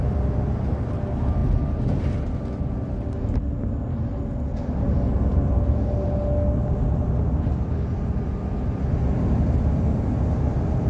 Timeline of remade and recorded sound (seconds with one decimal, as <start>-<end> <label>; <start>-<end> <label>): 0.0-10.9 recorded